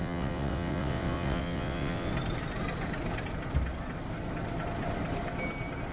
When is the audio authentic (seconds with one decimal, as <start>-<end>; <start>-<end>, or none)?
2.1-5.9